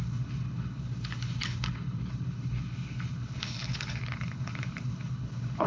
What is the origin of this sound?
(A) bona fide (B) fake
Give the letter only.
B